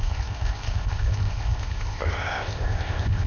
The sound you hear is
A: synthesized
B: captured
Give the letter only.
A